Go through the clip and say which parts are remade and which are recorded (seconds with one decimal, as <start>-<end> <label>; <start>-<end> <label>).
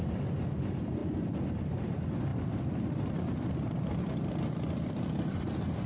0.0-1.0 recorded; 1.0-1.7 remade; 1.7-2.3 recorded; 2.3-5.1 remade; 5.1-5.9 recorded